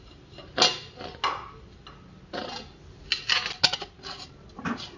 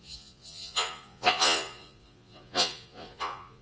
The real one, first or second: first